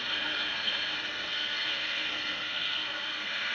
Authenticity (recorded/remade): remade